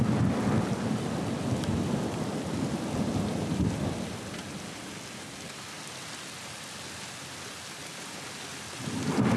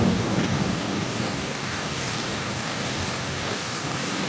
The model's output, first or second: second